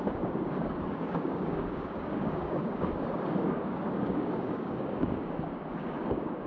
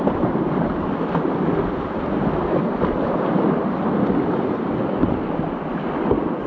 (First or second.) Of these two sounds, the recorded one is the second